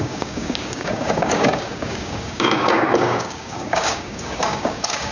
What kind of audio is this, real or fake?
fake